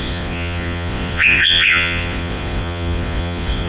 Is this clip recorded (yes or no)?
no